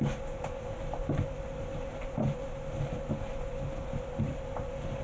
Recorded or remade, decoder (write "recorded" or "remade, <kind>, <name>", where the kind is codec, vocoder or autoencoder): recorded